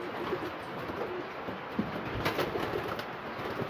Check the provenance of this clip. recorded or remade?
recorded